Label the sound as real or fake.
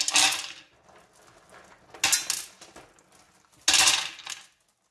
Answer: real